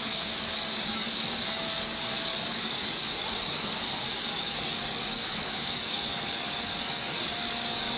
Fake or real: fake